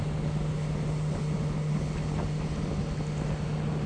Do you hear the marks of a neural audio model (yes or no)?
no